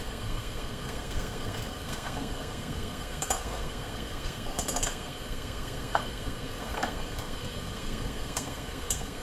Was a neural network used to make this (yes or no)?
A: yes